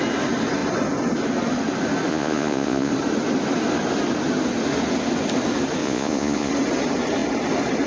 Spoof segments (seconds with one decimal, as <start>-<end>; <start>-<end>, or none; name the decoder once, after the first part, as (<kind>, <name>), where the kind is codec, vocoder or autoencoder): 2.1-2.9 (vocoder, Vocos); 5.8-6.5